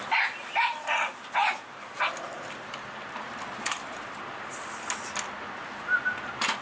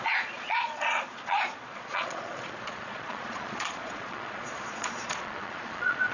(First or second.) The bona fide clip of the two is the first